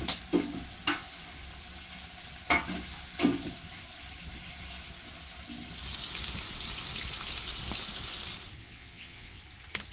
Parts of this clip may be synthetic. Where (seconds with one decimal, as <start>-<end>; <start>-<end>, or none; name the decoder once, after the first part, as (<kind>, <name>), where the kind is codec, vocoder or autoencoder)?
8.6-9.4 (vocoder, WaveNeXt)